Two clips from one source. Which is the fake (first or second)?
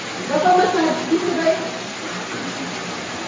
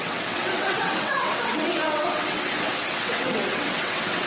second